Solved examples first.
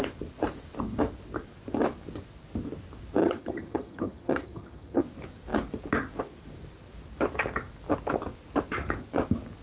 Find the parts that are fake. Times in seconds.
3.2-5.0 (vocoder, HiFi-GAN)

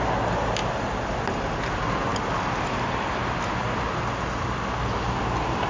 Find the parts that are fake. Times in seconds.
none

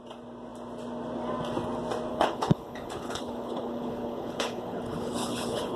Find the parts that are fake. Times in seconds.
2.1-5.8 (codec, HILCodec)